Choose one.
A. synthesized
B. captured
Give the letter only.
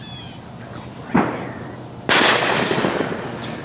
B